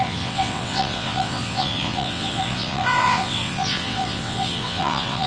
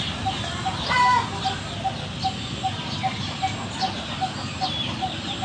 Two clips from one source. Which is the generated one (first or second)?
first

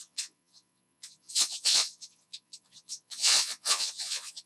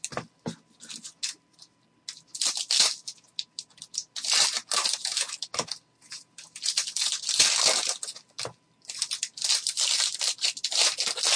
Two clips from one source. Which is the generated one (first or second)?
first